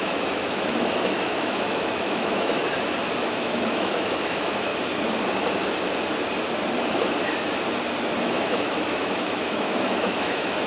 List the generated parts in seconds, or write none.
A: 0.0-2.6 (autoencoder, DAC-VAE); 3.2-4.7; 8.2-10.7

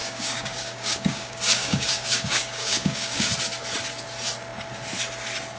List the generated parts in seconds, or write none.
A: 0.0-3.3 (codec, DAC)

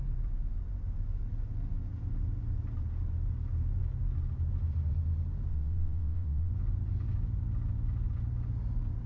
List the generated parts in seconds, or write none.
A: 5.5-6.5 (vocoder, WaveNeXt)

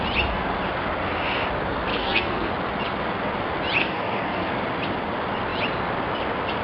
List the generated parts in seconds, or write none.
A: 1.9-2.5 (codec, SNAC); 3.8-4.5

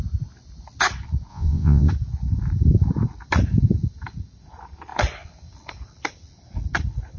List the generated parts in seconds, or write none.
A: 1.3-1.9 (vocoder, Vocos)

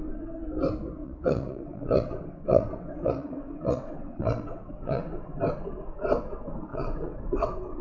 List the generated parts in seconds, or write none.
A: 1.0-5.4 (vocoder, WaveNeXt); 6.7-7.8

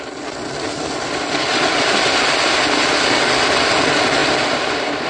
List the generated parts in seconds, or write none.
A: none

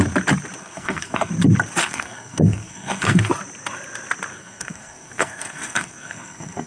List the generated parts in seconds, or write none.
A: 0.6-1.3 (codec, SNAC); 1.8-3.3; 4.3-6.7